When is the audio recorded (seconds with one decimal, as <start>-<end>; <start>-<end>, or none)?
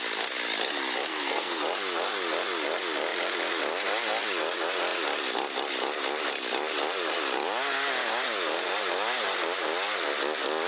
0.0-1.1; 1.6-10.7